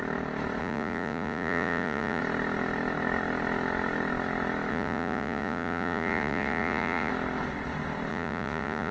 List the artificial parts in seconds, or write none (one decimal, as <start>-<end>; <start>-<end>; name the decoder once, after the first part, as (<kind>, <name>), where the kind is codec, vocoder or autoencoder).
0.6-2.2 (vocoder, Vocos); 4.7-7.1; 8.1-8.9